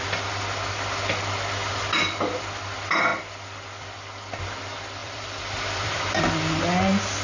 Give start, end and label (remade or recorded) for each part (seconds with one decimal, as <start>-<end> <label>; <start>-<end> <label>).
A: 0.0-5.0 recorded; 5.0-6.6 remade; 6.6-7.2 recorded